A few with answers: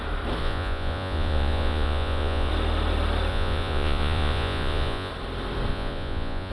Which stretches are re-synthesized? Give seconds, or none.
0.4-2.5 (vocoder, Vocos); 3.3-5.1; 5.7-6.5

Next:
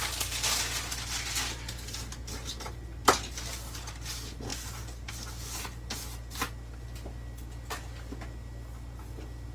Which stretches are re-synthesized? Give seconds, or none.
none

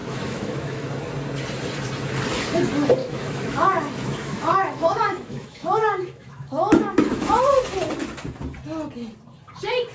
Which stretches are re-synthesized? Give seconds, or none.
0.0-0.9 (autoencoder, DAC-VAE); 3.0-7.4

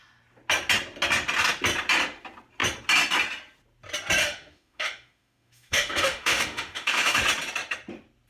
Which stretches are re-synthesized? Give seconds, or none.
4.2-7.2 (autoencoder, DAC-VAE)

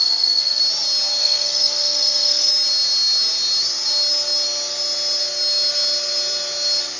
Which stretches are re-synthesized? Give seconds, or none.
0.0-0.6 (codec, SNAC); 1.2-2.5

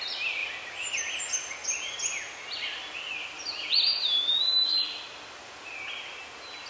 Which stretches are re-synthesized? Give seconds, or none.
none

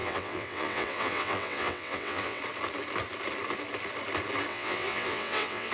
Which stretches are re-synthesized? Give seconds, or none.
0.0-2.4 (vocoder, WaveNeXt); 4.5-5.7